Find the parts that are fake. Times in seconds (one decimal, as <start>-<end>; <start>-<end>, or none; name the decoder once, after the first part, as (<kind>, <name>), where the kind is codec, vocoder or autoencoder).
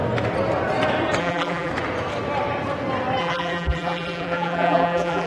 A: 1.2-1.7 (vocoder, BigVGAN v2); 3.2-5.3